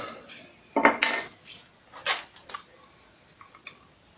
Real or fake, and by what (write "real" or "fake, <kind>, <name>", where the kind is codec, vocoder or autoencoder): real